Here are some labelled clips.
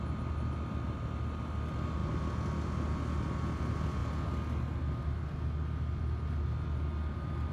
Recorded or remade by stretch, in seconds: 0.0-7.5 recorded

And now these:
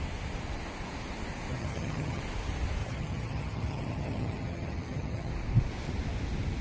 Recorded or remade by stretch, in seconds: 0.0-1.5 recorded; 1.5-2.2 remade; 2.2-2.8 recorded; 2.8-5.3 remade; 5.3-6.6 recorded